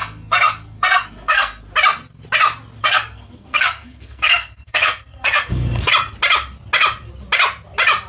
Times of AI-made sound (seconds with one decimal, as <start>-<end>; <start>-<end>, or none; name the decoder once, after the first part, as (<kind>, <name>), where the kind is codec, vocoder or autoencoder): 0.0-1.6 (codec, SNAC); 2.8-5.9